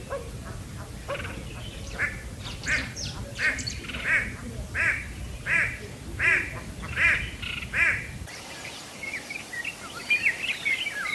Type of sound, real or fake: fake